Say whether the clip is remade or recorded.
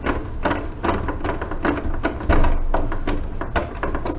recorded